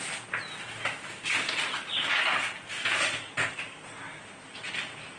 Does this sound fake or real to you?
real